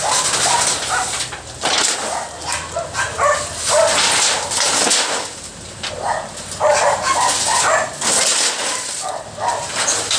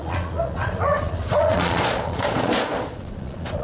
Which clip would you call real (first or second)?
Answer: first